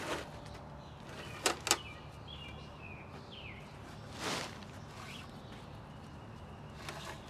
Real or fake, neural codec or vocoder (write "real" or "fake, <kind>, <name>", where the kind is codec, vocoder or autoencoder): real